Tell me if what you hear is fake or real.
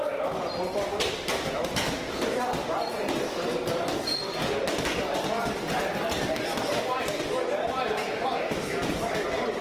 real